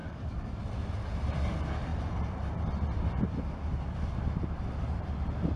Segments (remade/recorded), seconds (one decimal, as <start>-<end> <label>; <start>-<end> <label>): 0.0-0.6 remade; 0.6-5.6 recorded